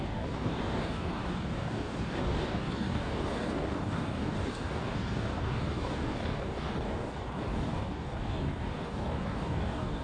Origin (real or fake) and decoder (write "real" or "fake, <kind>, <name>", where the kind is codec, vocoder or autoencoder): fake, codec, DAC